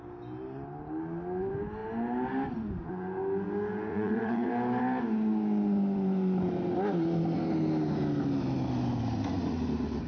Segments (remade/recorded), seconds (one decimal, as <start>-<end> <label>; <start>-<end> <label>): 0.0-3.9 recorded; 3.9-4.5 remade; 4.5-10.1 recorded